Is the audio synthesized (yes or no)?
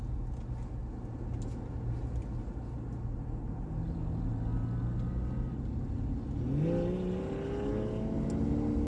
no